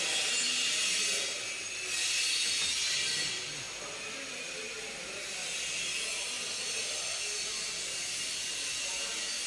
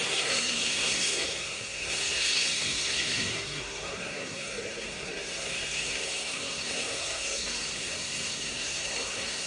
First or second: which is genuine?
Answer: first